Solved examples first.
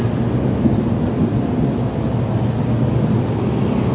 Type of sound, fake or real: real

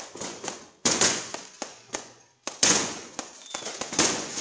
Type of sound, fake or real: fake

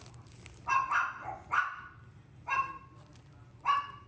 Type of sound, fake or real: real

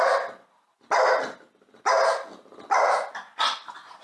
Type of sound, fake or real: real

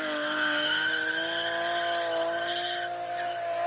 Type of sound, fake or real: real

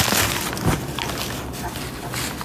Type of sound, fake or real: real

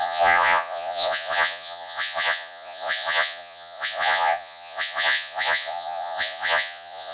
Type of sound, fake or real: fake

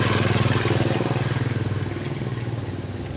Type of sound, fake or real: real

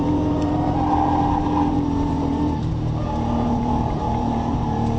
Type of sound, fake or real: fake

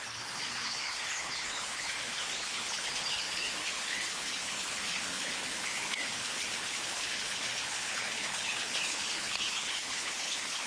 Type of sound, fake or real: fake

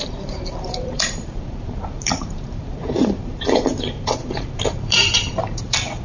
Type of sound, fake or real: fake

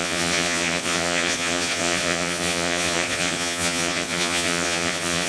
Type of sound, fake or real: fake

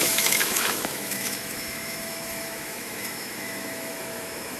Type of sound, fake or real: fake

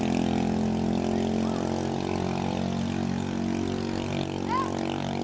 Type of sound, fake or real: real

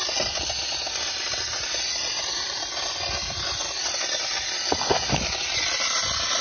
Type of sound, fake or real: real